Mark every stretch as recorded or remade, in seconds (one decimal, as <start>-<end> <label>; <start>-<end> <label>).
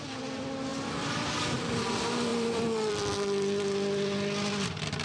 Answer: 0.0-2.3 recorded; 2.3-2.9 remade; 2.9-5.0 recorded